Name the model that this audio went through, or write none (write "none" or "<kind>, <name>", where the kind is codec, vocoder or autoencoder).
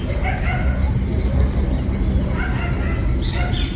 none